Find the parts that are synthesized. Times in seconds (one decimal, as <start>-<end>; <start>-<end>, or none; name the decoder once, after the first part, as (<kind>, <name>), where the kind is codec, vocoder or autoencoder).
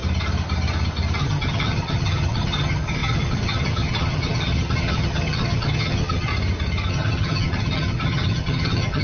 1.2-6.3 (vocoder, HiFi-GAN); 6.9-9.0